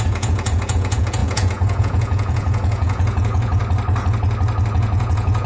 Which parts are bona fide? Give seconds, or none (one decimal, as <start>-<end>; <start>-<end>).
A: 3.6-4.7